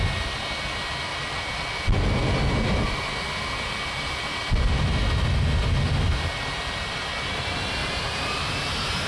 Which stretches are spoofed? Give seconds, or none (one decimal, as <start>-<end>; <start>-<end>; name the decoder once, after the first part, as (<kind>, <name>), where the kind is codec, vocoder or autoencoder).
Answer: 1.1-6.3 (vocoder, BigVGAN v2); 7.8-8.4